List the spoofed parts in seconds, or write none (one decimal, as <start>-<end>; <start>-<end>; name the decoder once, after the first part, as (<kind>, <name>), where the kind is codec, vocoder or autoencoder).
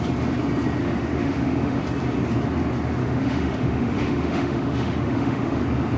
0.8-1.8 (autoencoder, DAC-VAE); 3.0-5.6